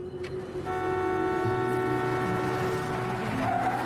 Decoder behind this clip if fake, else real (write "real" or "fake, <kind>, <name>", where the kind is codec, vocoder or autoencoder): real